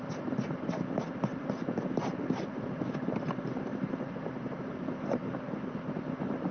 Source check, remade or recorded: recorded